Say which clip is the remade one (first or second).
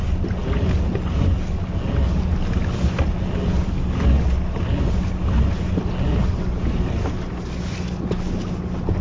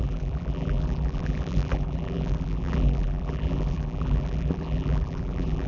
second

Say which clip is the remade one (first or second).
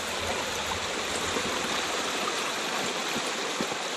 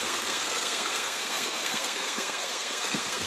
second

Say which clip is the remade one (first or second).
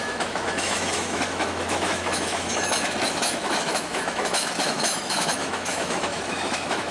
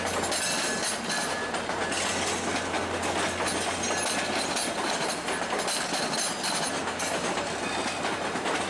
first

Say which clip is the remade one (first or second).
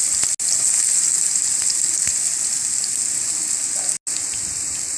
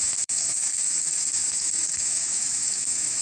second